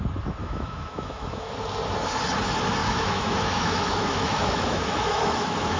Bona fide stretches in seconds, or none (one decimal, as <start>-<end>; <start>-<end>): 0.0-0.4; 1.5-2.8

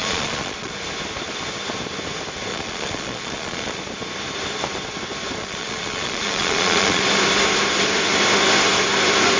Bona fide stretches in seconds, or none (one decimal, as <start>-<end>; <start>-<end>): 0.7-2.5; 3.8-5.4; 7.0-9.4

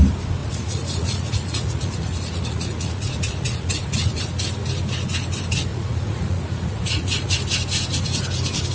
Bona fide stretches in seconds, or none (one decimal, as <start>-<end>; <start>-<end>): 0.0-0.4; 4.2-5.7; 7.3-8.7

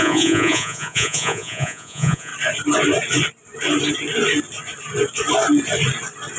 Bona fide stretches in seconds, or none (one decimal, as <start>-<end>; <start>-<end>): 2.3-6.4

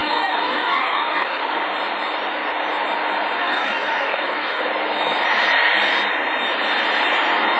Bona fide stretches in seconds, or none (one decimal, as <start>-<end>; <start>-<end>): 1.4-3.4; 4.6-7.6

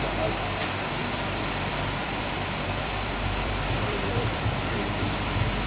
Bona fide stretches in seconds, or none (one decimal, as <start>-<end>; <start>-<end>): 0.0-1.0; 4.4-5.7

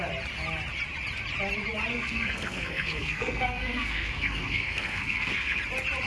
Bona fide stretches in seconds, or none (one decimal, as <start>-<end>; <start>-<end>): 0.0-1.9; 5.6-6.1